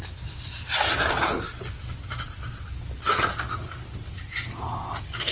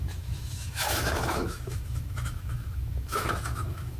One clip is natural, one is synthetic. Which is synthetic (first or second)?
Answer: second